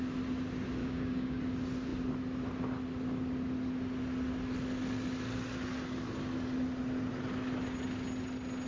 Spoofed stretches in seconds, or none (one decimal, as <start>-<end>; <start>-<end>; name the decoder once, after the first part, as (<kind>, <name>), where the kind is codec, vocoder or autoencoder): 0.8-1.4 (codec, DAC)